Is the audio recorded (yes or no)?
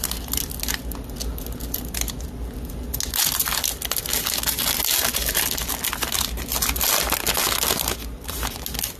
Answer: yes